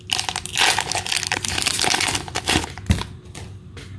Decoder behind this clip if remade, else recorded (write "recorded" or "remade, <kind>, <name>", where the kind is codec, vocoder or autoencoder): recorded